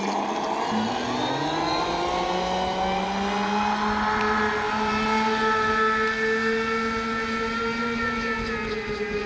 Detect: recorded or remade recorded